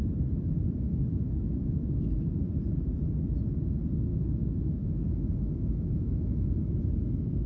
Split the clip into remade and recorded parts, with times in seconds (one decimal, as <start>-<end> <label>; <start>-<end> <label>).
0.0-0.9 recorded; 0.9-2.1 remade; 2.1-4.1 recorded; 4.1-6.7 remade; 6.7-7.5 recorded